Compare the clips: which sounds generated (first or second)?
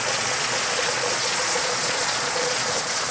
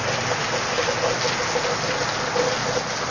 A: first